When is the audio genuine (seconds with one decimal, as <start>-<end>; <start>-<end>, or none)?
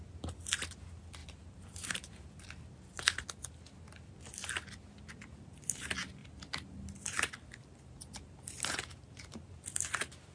0.0-1.2; 2.5-6.2; 9.4-10.3